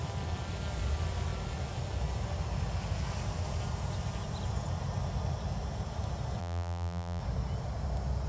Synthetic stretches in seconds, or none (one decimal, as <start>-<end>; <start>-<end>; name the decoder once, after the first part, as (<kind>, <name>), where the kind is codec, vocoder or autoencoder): 6.4-7.2 (vocoder, BigVGAN v2)